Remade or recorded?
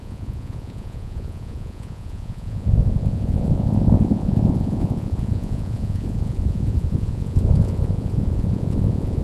remade